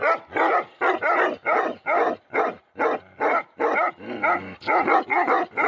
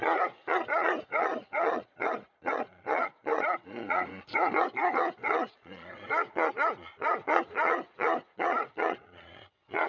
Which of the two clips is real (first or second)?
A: first